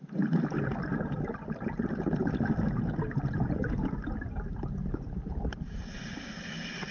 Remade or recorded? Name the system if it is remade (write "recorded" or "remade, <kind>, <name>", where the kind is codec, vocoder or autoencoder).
recorded